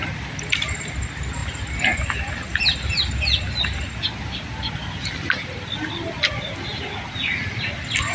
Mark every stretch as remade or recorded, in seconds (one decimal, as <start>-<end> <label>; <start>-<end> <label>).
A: 0.0-8.1 recorded